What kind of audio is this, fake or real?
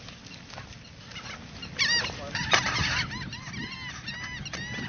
real